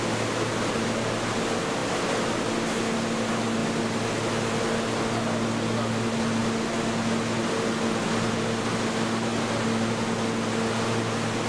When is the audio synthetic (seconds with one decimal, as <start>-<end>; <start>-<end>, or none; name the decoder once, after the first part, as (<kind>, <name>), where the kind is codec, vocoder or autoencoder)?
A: none